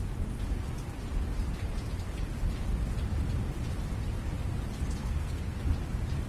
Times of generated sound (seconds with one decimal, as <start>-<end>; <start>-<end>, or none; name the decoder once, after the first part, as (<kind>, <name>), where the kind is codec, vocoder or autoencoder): 5.0-5.6 (codec, SNAC)